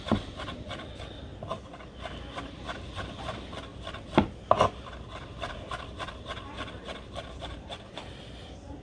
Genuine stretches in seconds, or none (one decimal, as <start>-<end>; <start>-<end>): 0.0-8.8